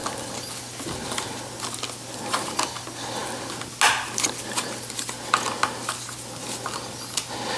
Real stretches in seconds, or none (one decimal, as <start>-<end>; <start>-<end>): 0.0-7.6

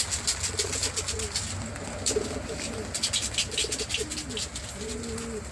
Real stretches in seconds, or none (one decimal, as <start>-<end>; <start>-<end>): 0.0-5.5

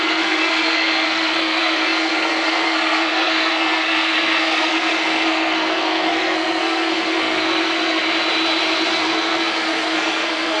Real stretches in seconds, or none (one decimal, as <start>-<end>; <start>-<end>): 8.0-8.9

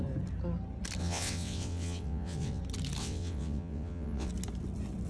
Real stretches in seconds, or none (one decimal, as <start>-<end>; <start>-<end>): 0.0-1.0; 2.6-3.0; 4.3-5.1

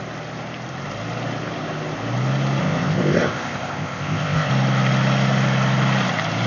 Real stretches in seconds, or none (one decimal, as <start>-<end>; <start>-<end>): 0.0-2.6; 4.5-6.5

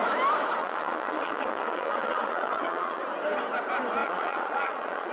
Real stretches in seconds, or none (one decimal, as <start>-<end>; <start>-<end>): 0.0-0.6; 3.0-4.0

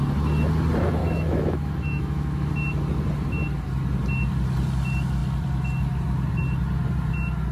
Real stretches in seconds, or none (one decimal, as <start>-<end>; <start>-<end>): 0.0-1.0; 2.5-7.5

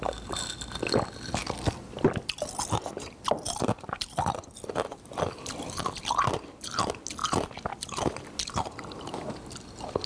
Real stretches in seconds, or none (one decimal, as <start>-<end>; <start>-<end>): 0.0-1.4; 6.1-10.1